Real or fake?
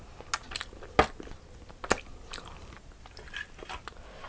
real